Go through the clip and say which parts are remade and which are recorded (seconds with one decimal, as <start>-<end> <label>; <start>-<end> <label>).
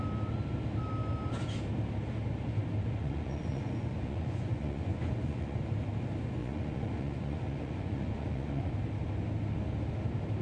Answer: 0.0-3.0 recorded; 3.0-5.6 remade; 5.6-6.4 recorded; 6.4-8.7 remade; 8.7-10.4 recorded